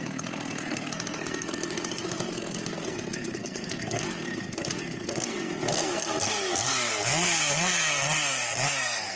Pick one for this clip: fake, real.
fake